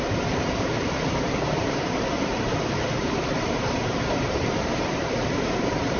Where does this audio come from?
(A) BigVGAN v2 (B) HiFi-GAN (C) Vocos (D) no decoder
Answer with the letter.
A